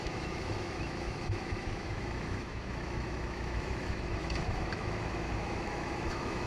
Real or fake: fake